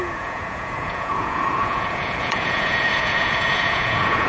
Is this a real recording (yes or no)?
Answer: no